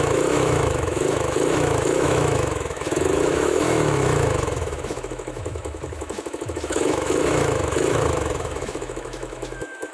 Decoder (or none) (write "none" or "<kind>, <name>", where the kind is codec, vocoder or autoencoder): autoencoder, DAC-VAE